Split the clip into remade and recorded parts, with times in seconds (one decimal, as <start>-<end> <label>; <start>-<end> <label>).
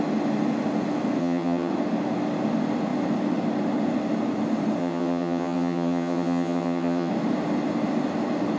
0.0-1.2 recorded; 1.2-1.7 remade; 1.7-4.8 recorded; 4.8-7.1 remade; 7.1-8.6 recorded